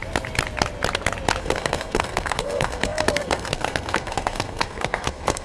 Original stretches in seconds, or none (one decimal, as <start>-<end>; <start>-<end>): 0.0-1.4